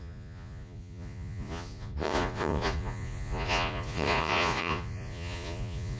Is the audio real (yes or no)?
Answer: no